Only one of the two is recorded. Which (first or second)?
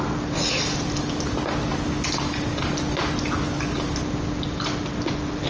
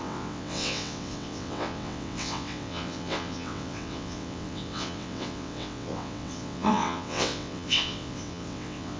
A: first